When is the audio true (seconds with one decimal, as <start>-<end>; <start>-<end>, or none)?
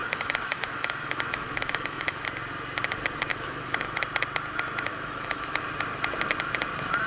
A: 2.2-3.3; 4.0-4.9; 5.6-7.1